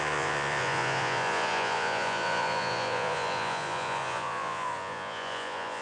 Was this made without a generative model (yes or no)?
no